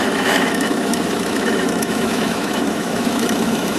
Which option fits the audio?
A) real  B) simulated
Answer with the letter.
B